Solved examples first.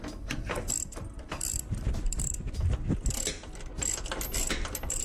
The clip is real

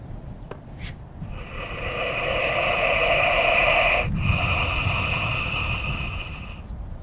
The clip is real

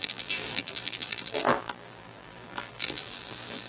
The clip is fake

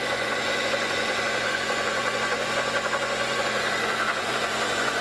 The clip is fake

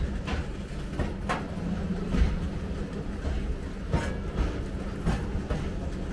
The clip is real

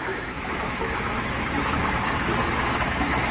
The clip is fake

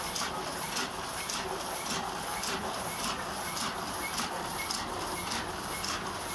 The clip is real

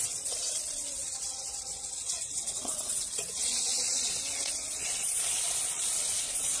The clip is fake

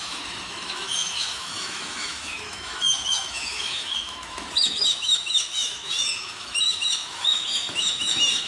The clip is fake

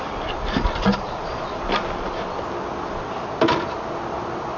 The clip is real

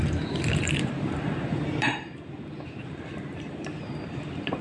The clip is fake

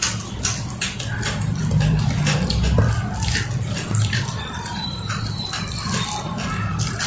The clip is fake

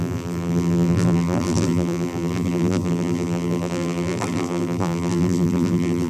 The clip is fake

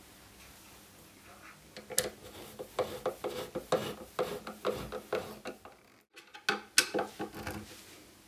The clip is real